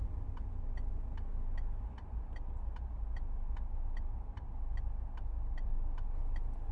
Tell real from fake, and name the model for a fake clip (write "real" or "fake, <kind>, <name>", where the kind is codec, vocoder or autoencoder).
real